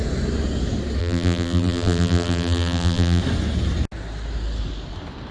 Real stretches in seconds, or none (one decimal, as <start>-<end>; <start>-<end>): 0.0-1.0; 3.2-5.3